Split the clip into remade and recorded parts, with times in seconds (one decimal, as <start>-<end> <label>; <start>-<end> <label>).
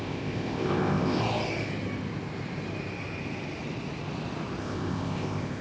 0.0-1.2 remade; 1.2-4.6 recorded; 4.6-5.6 remade